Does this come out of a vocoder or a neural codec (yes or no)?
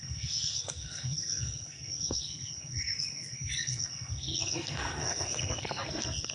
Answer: yes